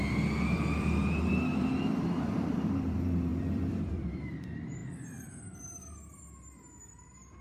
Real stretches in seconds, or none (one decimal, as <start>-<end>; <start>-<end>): 4.8-6.9